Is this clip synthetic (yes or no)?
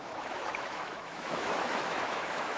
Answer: yes